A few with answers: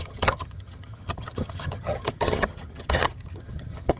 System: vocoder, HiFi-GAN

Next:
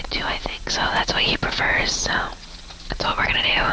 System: vocoder, Vocos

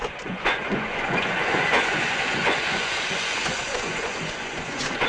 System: vocoder, Vocos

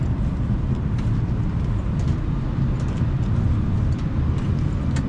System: none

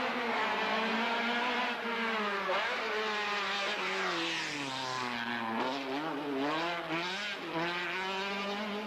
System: none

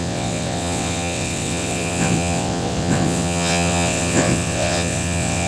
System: vocoder, WaveNeXt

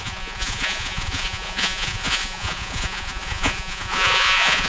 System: vocoder, Vocos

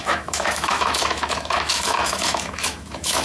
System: autoencoder, DAC-VAE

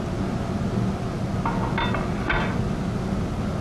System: none